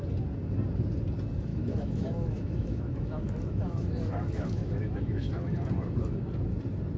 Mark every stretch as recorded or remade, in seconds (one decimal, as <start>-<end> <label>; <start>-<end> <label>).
0.0-1.5 recorded; 1.5-5.7 remade; 5.7-7.0 recorded